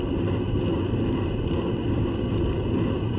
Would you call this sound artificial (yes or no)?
no